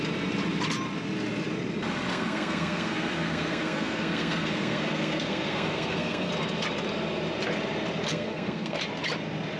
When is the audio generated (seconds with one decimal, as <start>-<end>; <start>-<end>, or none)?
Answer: 2.1-6.3; 8.1-8.8